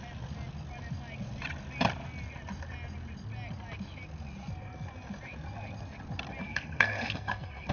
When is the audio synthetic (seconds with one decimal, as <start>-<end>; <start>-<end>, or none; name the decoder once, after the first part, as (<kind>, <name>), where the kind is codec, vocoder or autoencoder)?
6.4-7.7 (codec, SNAC)